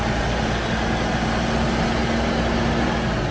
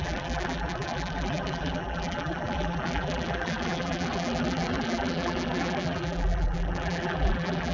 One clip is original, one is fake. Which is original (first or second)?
first